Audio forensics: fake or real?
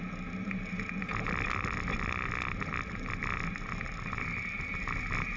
real